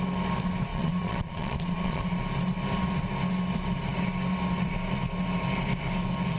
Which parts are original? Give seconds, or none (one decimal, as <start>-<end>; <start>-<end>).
0.0-0.7; 2.2-6.4

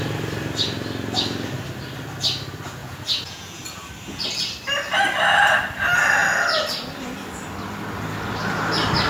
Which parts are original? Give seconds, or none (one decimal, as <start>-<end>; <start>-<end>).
0.0-2.8; 3.6-9.1

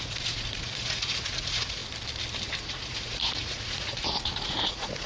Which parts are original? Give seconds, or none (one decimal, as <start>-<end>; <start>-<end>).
1.8-2.6